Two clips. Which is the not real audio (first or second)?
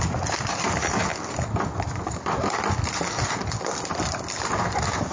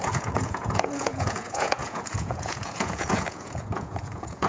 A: second